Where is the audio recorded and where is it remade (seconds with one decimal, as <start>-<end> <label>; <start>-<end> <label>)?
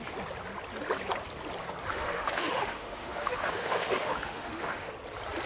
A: 0.0-1.9 recorded; 1.9-4.9 remade; 4.9-5.5 recorded